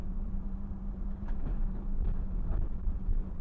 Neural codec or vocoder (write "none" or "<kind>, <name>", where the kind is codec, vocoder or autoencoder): vocoder, BigVGAN v2